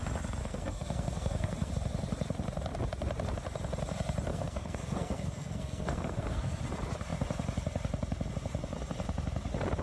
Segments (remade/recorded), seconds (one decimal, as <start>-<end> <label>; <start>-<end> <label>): 0.0-0.4 recorded; 0.4-1.7 remade; 1.7-4.3 recorded; 4.3-6.6 remade; 6.6-9.8 recorded